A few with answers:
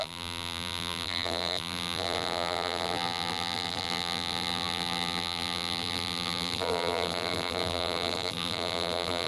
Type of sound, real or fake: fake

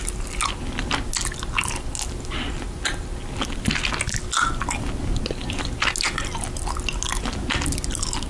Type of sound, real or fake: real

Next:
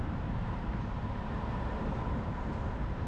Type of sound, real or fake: fake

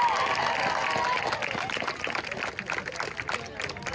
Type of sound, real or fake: real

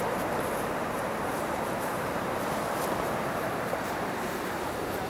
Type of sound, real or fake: fake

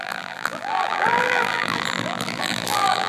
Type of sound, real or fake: fake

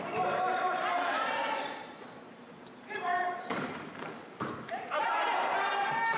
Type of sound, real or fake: fake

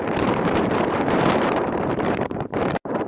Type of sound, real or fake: fake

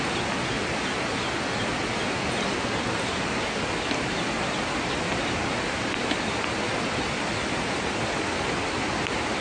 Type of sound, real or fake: real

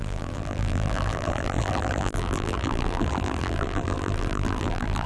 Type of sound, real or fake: fake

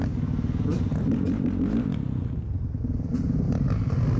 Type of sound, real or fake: real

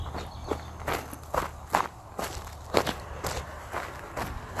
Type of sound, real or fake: real